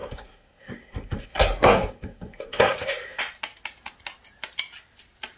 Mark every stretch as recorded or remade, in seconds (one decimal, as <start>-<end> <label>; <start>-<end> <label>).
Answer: 0.0-3.2 remade; 3.2-5.4 recorded